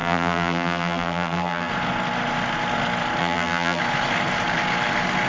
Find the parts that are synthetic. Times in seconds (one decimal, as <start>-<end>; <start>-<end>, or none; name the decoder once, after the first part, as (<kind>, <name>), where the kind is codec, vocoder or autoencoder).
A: 0.0-1.7 (vocoder, BigVGAN v2); 3.2-3.8